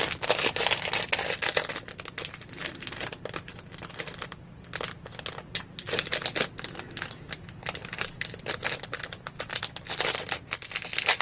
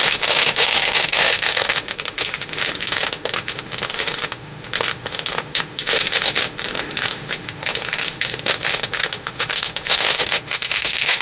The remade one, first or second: second